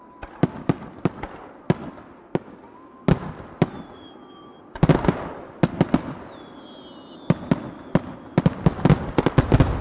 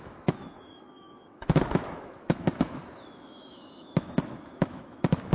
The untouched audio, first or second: first